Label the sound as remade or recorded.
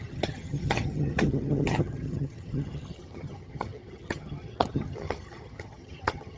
remade